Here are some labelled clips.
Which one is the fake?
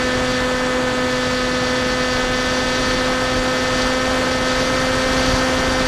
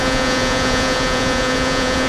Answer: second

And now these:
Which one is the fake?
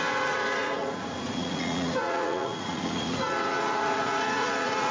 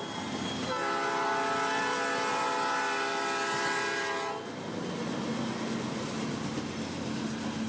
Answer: first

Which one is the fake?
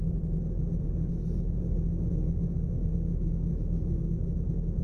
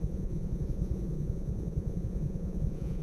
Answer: second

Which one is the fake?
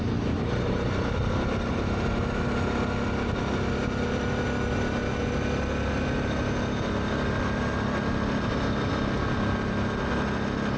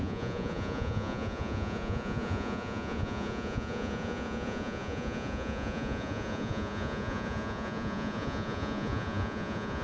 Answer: second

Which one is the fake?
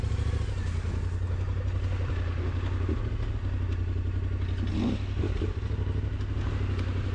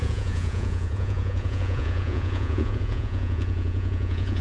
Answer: second